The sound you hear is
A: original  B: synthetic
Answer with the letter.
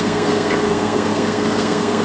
B